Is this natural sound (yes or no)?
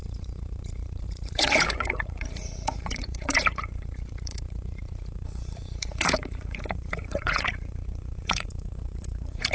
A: no